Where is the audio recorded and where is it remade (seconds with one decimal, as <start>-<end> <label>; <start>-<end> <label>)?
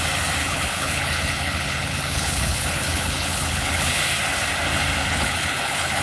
0.0-0.4 recorded; 0.4-4.0 remade; 4.0-5.0 recorded; 5.0-6.0 remade